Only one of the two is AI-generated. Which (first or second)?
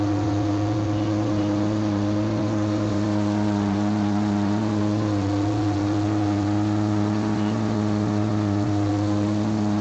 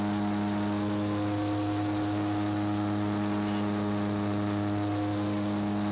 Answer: first